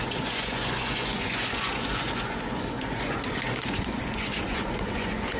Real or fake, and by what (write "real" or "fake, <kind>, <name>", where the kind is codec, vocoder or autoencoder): fake, vocoder, Vocos